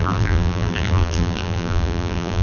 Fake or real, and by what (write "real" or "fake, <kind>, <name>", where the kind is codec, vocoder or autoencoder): fake, vocoder, BigVGAN v2